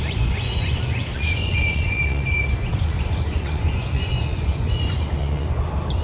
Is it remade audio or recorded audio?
remade